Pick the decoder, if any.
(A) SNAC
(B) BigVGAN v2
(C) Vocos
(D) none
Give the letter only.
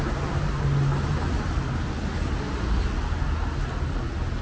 D